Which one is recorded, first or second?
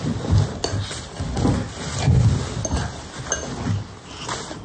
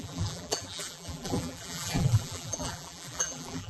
first